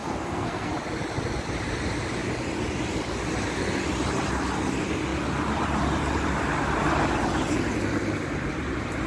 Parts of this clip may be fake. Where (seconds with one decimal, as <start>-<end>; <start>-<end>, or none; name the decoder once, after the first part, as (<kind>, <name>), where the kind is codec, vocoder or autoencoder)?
0.0-0.7 (codec, SNAC)